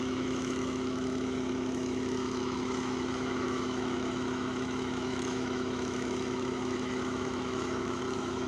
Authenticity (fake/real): fake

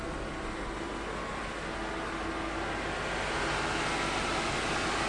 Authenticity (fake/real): real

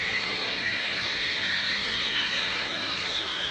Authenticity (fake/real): fake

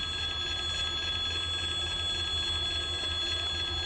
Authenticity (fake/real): real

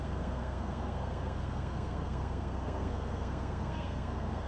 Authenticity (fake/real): fake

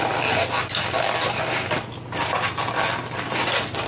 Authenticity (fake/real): real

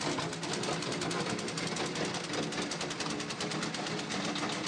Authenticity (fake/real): real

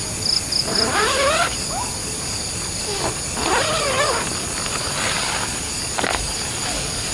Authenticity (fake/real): real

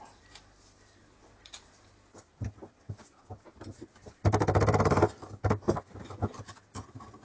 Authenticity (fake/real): real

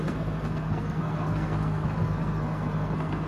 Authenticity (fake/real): fake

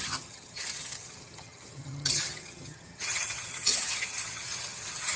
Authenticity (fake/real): fake